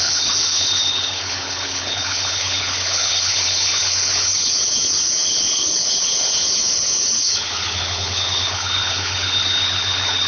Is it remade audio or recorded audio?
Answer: remade